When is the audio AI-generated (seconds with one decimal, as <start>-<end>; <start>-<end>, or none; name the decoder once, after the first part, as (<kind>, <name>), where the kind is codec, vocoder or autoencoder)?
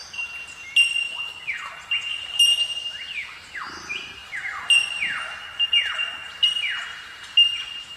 none